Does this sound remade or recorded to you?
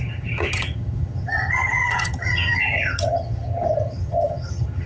remade